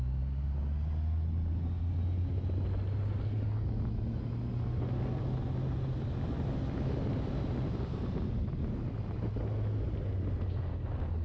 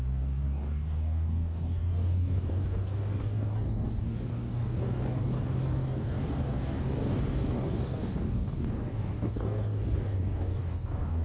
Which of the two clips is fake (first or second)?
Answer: second